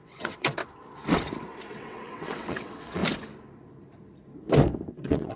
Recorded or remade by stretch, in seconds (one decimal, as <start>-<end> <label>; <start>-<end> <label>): 0.0-0.6 remade; 0.6-1.7 recorded; 1.7-3.0 remade; 3.0-4.9 recorded; 4.9-5.4 remade